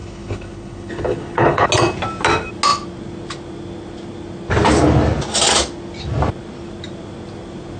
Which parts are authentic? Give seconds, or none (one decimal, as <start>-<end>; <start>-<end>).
1.7-7.8